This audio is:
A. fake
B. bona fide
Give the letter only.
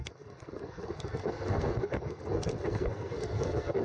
A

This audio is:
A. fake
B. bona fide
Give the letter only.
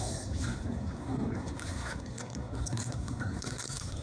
A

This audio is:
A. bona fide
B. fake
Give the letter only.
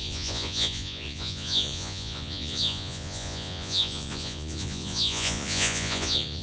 B